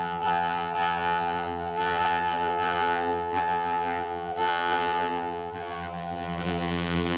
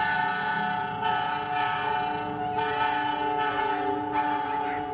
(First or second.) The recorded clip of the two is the second